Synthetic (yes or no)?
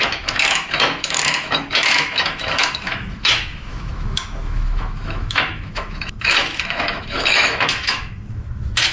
yes